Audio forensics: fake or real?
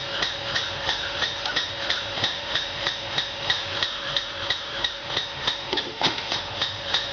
fake